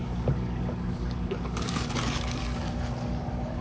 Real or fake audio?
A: fake